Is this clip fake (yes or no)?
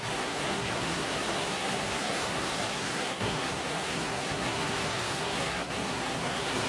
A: yes